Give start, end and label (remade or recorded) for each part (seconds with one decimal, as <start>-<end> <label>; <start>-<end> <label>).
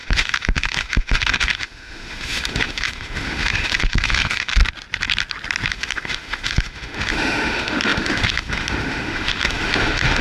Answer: 0.0-4.6 remade; 4.6-5.7 recorded; 5.7-10.2 remade